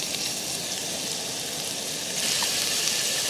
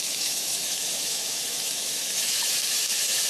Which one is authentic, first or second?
first